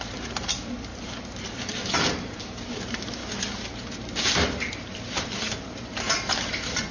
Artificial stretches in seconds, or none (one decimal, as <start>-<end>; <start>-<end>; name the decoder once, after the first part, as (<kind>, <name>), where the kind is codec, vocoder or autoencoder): 0.0-3.2 (vocoder, BigVGAN v2); 3.8-6.9